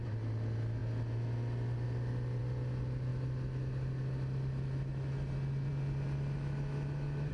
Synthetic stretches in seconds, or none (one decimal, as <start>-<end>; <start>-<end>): none